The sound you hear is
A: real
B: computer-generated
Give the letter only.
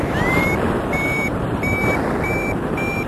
B